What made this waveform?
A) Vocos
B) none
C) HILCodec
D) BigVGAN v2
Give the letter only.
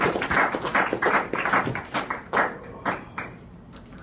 B